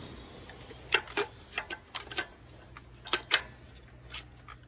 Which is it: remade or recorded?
recorded